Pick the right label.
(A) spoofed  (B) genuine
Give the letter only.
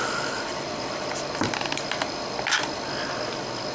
B